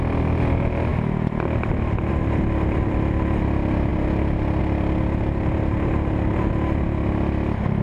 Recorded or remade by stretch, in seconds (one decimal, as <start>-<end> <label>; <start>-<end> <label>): 0.0-7.8 recorded